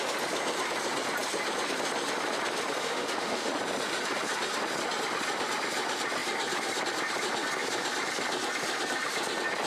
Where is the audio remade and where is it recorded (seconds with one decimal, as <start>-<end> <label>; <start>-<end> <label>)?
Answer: 0.0-2.8 recorded; 2.8-3.5 remade; 3.5-9.7 recorded